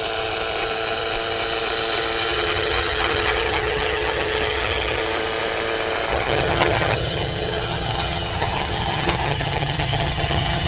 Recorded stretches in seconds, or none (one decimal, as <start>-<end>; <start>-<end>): 0.0-2.3; 5.0-6.1